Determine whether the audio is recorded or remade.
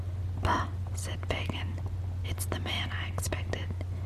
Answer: recorded